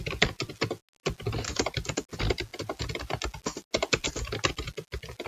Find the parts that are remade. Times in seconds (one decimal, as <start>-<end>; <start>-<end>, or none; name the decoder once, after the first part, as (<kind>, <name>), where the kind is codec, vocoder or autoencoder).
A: none